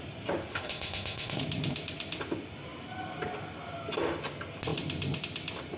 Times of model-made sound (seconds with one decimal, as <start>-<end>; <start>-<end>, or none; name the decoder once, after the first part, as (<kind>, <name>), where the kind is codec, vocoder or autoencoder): 0.5-1.4 (autoencoder, DAC-VAE)

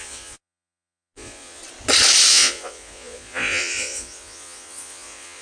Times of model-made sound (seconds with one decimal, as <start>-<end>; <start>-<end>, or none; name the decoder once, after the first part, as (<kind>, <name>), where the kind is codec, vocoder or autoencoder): 0.0-1.6 (vocoder, Vocos); 2.3-5.4